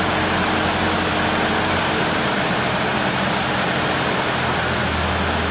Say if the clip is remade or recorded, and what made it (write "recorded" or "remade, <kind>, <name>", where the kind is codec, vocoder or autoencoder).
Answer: recorded